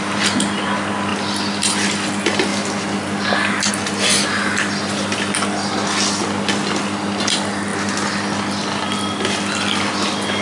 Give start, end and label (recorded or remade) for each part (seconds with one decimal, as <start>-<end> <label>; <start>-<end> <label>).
0.0-10.4 recorded